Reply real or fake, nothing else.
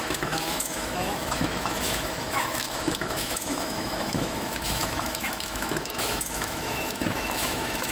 fake